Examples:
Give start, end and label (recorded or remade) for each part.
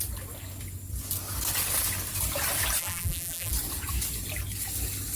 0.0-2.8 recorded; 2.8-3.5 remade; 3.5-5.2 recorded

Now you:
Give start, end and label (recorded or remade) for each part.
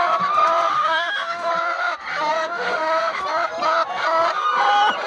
0.0-0.7 recorded; 0.7-1.5 remade; 1.5-2.3 recorded; 2.3-3.2 remade; 3.2-5.1 recorded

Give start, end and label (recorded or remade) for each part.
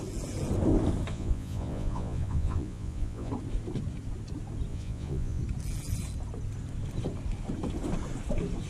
0.0-1.1 recorded; 1.1-3.3 remade; 3.3-4.7 recorded; 4.7-5.4 remade; 5.4-8.7 recorded